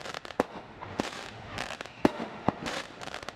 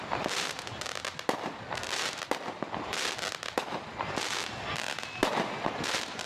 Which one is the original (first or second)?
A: second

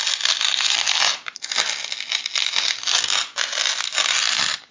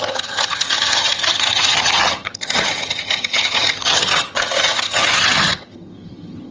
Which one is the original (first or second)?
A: first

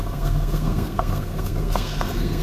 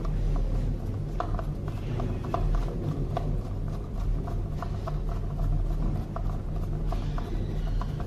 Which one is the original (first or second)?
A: second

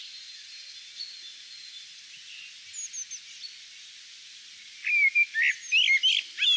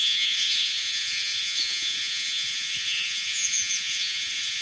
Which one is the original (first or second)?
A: first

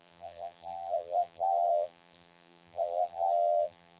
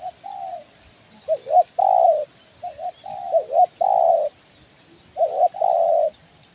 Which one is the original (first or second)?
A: second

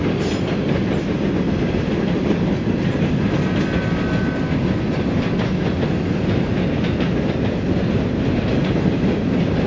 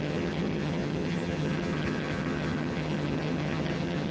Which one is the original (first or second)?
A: first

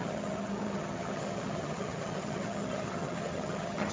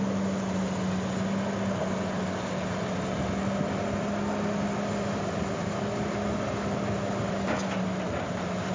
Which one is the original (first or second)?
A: second